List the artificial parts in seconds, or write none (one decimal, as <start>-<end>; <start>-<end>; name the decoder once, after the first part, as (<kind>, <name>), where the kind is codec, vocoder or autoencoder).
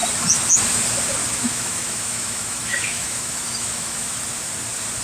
1.2-4.2 (autoencoder, DAC-VAE)